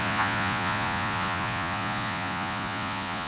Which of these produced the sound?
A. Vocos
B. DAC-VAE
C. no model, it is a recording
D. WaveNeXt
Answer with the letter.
A